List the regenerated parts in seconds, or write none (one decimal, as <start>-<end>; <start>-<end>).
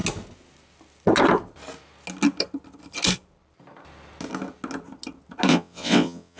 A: 5.5-6.4